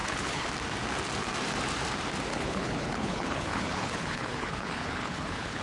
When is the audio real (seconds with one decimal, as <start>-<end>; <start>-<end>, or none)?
0.5-2.3